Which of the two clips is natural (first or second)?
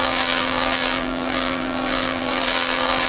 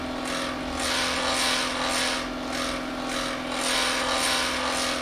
second